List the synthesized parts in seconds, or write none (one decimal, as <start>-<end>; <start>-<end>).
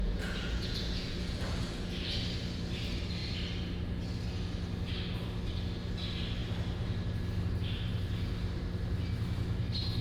0.0-2.2